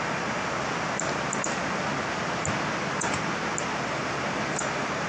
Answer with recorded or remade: recorded